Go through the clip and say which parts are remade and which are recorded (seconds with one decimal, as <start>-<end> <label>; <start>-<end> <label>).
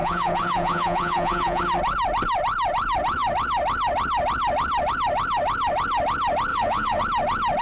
0.0-1.6 remade; 1.6-6.5 recorded; 6.5-7.0 remade; 7.0-7.6 recorded